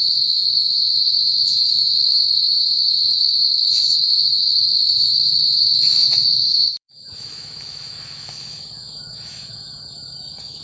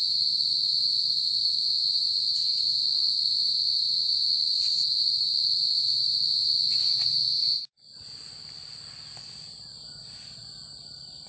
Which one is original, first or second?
second